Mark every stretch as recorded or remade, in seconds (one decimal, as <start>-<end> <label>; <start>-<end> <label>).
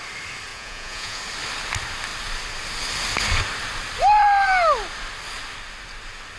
0.0-0.5 recorded; 0.5-1.2 remade; 1.2-6.4 recorded